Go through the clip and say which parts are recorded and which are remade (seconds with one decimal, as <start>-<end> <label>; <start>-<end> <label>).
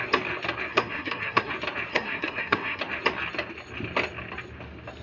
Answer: 0.0-0.7 recorded; 0.7-1.5 remade; 1.5-1.9 recorded; 1.9-2.8 remade; 2.8-5.0 recorded